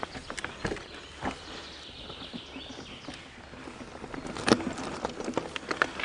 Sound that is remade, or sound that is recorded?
recorded